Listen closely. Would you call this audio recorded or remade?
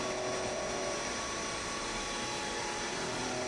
recorded